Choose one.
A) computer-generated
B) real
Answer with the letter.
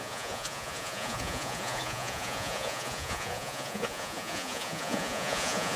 A